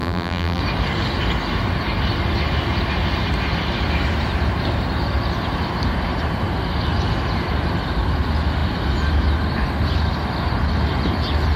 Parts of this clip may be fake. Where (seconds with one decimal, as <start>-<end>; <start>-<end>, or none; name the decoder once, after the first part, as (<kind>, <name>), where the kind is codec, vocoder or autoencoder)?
0.0-0.6 (vocoder, BigVGAN v2)